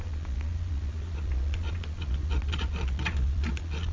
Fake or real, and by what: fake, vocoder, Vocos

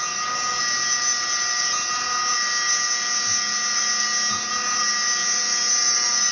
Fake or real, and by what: real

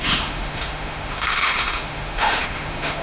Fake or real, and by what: fake, autoencoder, DAC-VAE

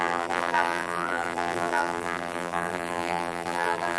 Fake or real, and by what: fake, vocoder, BigVGAN v2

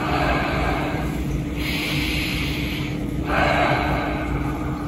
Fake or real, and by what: fake, vocoder, BigVGAN v2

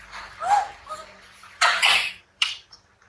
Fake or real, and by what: fake, vocoder, BigVGAN v2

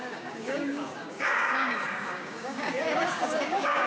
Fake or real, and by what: fake, codec, DAC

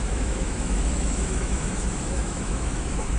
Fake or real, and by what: fake, autoencoder, DAC-VAE